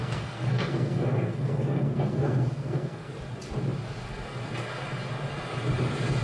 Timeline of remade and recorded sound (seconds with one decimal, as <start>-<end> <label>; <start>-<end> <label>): 0.0-3.1 remade; 3.1-6.2 recorded